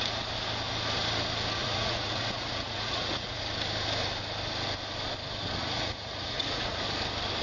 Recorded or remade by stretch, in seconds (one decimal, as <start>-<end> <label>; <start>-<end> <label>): 0.0-1.6 recorded; 1.6-3.4 remade; 3.4-5.6 recorded; 5.6-6.8 remade; 6.8-7.4 recorded